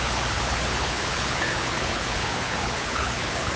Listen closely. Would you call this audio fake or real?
fake